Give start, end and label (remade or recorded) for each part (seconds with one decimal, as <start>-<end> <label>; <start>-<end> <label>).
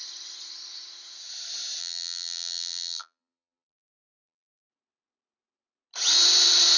0.0-1.8 recorded; 1.8-4.7 remade; 4.7-6.8 recorded